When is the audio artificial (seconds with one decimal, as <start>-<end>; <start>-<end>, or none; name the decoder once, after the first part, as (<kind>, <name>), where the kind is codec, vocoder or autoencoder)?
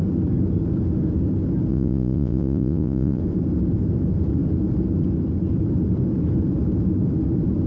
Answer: 1.7-3.2 (vocoder, Vocos)